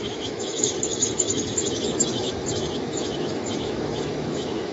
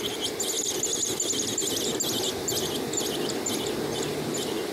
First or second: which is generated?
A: first